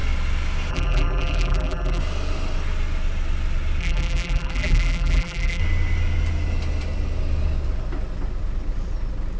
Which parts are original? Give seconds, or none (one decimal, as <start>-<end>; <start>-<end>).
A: 0.0-0.7; 2.0-3.8; 5.6-9.4